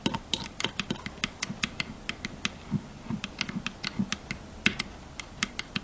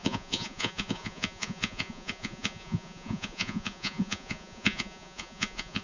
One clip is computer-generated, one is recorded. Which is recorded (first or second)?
first